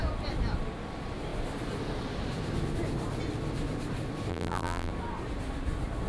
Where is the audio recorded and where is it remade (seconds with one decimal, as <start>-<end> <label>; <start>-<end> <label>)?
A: 0.0-4.3 recorded; 4.3-4.9 remade; 4.9-6.1 recorded